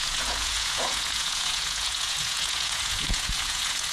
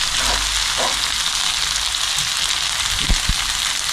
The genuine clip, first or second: second